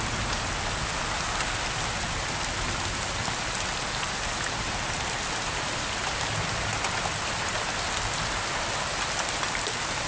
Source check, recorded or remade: recorded